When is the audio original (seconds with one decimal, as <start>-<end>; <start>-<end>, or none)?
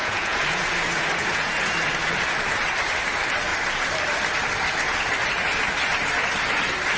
1.5-7.0